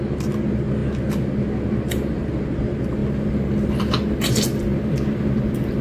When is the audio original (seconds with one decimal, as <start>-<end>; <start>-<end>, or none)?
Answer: 0.0-5.8